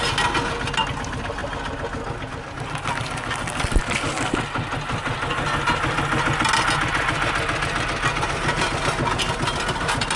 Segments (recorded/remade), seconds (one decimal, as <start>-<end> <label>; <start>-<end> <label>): 0.0-10.2 recorded